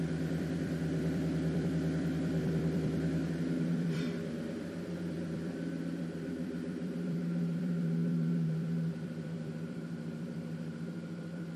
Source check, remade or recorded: remade